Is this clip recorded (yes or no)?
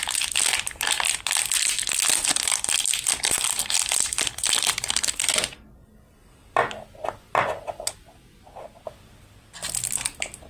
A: yes